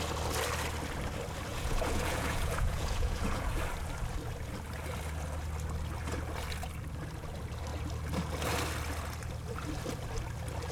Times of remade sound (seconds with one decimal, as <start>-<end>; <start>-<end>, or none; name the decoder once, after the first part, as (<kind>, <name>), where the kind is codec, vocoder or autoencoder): 1.5-3.6 (vocoder, Vocos)